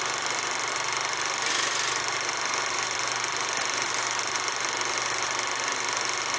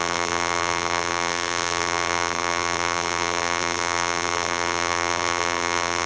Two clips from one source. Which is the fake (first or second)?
second